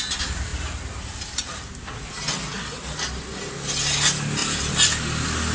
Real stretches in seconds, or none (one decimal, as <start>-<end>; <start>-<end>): 0.0-4.4; 5.0-5.5

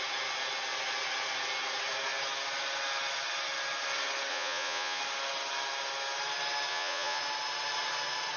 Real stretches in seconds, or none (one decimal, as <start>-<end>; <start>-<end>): 0.0-4.3; 5.0-6.7; 7.2-8.4

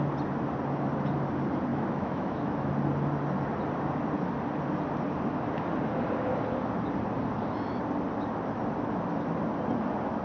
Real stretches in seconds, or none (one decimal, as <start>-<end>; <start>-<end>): 0.0-1.7; 2.7-10.2

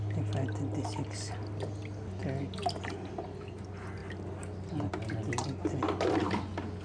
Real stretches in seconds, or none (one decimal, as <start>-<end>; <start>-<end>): 0.0-6.8

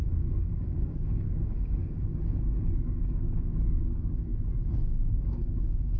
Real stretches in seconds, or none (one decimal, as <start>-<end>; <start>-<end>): none

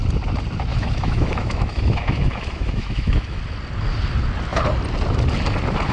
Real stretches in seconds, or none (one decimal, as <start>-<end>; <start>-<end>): 0.0-0.7; 3.4-5.9

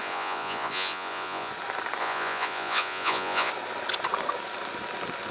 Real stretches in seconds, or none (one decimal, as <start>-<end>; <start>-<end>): 1.5-2.0; 3.5-5.3